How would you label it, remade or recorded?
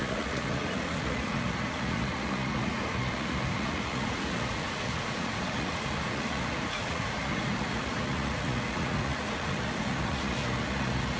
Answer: remade